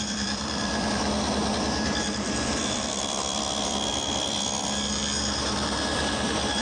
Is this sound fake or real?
fake